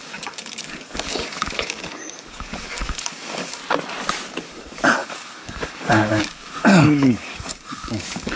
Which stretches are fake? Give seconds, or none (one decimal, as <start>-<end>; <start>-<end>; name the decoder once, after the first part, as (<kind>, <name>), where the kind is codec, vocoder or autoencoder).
0.0-3.6 (codec, DAC); 4.4-8.4